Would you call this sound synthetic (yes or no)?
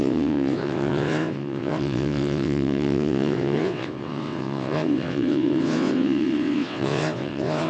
yes